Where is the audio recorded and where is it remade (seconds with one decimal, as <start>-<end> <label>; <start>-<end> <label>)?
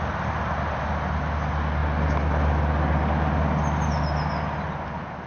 0.0-5.3 recorded